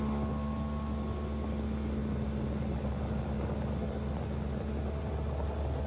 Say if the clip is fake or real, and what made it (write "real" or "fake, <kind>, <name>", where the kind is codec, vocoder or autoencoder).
real